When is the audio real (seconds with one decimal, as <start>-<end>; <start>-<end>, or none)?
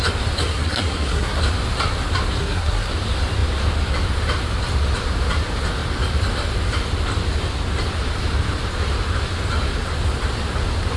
0.0-0.4; 1.4-2.4; 2.9-11.0